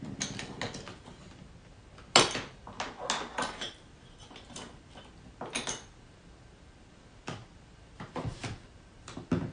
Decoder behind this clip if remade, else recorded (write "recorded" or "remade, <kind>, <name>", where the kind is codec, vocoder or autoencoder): recorded